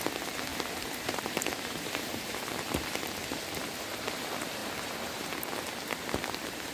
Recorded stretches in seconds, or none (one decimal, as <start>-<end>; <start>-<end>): 0.0-0.5; 3.1-4.6; 5.3-6.7